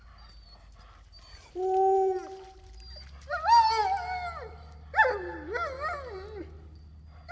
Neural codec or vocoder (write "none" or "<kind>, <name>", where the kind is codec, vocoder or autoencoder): none